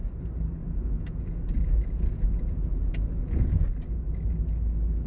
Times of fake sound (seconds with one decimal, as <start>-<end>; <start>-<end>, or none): 0.6-3.7